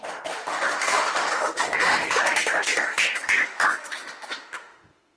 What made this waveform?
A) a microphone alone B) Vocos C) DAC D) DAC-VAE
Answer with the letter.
D